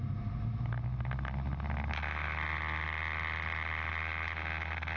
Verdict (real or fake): real